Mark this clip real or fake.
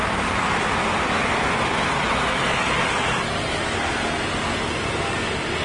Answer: real